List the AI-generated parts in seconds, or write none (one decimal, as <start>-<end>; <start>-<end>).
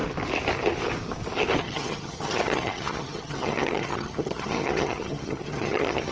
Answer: 1.6-6.1